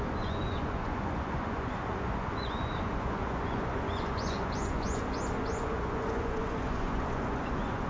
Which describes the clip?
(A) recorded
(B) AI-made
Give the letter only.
B